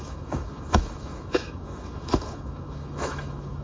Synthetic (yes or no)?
yes